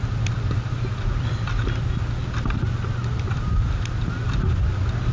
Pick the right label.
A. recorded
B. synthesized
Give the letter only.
A